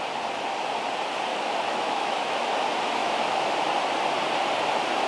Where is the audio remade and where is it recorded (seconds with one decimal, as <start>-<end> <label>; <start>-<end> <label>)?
0.0-1.3 recorded; 1.3-2.4 remade; 2.4-3.0 recorded; 3.0-3.5 remade; 3.5-5.1 recorded